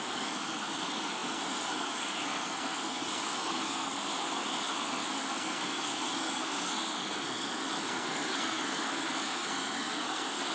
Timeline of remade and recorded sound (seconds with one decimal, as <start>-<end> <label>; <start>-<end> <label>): 0.0-10.5 remade